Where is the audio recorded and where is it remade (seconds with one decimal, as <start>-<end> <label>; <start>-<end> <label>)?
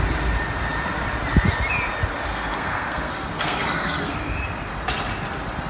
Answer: 0.0-2.3 recorded; 2.3-4.2 remade; 4.2-5.7 recorded